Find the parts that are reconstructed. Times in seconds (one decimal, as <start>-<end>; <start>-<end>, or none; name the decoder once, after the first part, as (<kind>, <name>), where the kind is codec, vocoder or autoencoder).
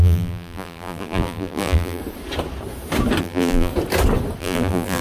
0.0-2.0 (vocoder, BigVGAN v2); 3.2-3.7; 4.4-5.0